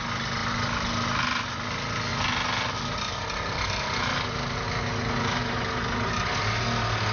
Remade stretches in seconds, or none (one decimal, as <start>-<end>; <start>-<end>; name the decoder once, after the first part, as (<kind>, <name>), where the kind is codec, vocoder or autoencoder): none